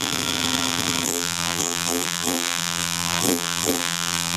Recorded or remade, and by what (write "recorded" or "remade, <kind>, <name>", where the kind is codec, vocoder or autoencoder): remade, vocoder, BigVGAN v2